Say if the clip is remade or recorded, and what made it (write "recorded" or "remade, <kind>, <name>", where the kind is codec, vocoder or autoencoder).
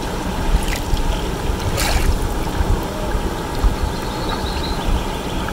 recorded